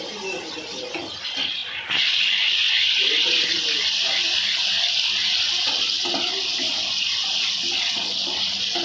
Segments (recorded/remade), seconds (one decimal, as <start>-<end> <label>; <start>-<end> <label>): 0.0-8.8 recorded